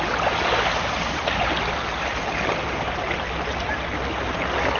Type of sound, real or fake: real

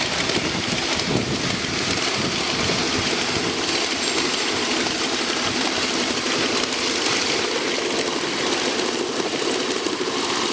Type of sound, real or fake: real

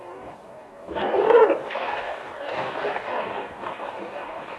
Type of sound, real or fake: fake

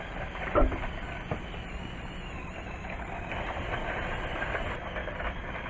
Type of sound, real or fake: real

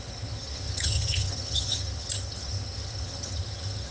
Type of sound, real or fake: fake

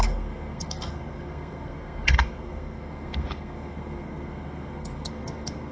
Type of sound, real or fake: fake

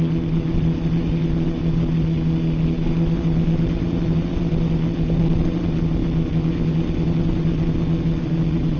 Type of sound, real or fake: real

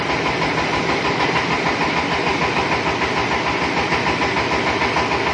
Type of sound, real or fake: real